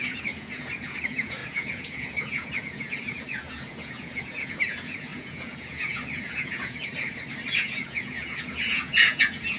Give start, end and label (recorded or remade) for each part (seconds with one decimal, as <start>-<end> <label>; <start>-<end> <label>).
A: 0.0-6.9 remade; 6.9-7.5 recorded; 7.5-9.6 remade